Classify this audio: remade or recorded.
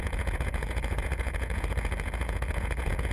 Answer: remade